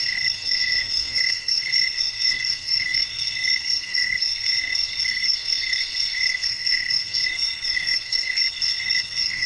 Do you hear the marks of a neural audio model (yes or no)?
yes